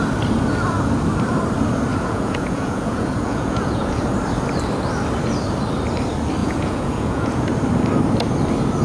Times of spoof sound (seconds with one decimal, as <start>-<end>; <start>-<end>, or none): 1.9-4.0; 6.4-7.4